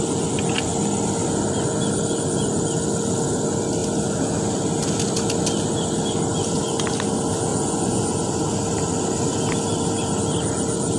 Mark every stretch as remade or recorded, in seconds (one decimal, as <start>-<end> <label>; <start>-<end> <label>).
0.0-7.5 recorded; 7.5-8.4 remade; 8.4-11.0 recorded